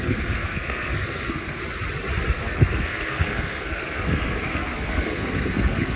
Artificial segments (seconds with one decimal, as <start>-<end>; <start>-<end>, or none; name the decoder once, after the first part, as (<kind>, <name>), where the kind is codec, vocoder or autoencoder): 0.0-1.6 (codec, SNAC); 2.3-6.0